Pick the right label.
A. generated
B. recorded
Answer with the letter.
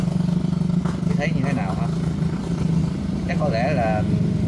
B